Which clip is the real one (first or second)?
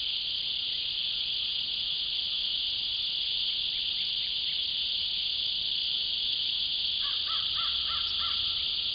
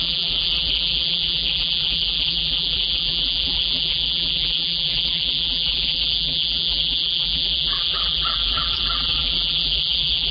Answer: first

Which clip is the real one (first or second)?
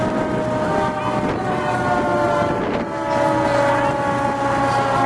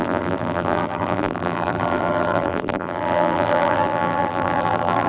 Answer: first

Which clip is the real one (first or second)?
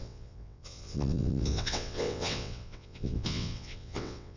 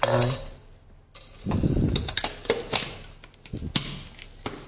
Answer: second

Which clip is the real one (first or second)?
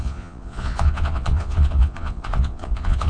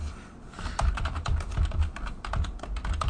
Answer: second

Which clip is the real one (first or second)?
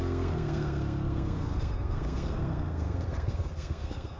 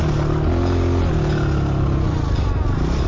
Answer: second